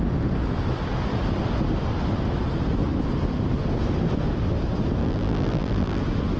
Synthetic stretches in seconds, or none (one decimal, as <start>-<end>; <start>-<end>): 5.0-6.0